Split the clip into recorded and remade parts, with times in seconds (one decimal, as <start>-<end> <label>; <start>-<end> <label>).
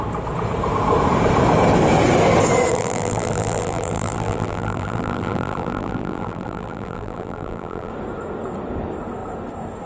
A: 0.0-2.7 recorded; 2.7-7.9 remade; 7.9-9.9 recorded